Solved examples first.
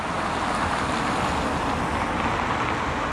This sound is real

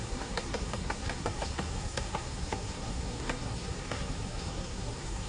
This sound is fake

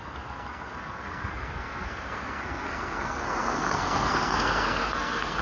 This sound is fake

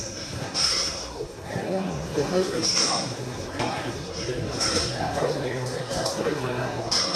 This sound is fake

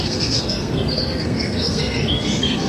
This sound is fake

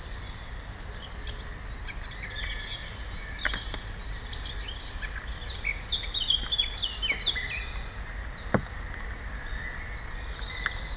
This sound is real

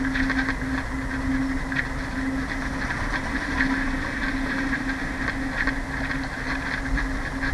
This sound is real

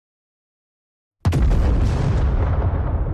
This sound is real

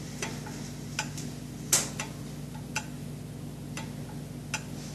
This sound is real